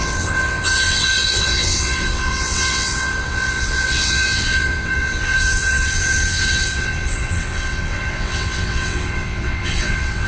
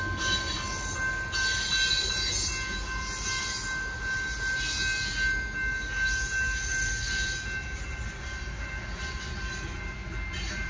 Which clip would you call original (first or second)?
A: second